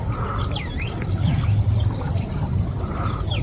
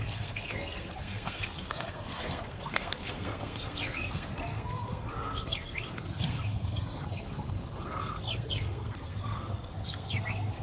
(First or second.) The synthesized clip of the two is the second